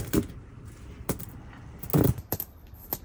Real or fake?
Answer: real